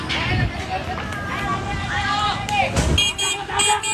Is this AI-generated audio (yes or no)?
no